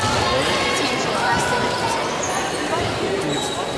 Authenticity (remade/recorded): recorded